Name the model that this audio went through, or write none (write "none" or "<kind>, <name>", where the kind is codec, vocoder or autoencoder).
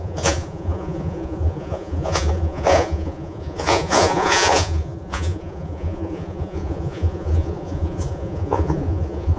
vocoder, Vocos